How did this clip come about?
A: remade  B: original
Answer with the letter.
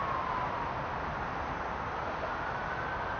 B